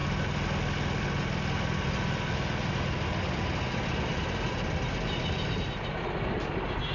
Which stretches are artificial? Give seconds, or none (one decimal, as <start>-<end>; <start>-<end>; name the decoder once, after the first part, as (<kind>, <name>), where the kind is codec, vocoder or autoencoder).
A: none